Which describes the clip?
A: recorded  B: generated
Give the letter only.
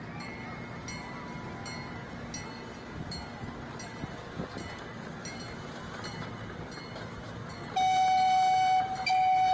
A